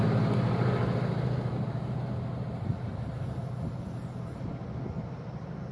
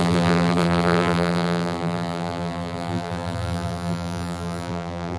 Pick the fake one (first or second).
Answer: second